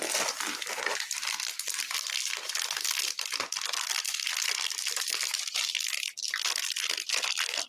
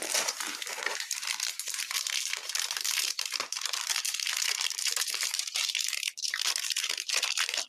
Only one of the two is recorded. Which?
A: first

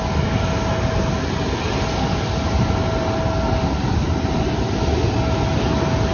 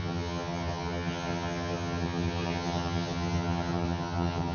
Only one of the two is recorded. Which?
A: first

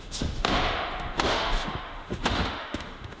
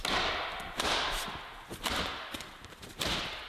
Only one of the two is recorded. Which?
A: second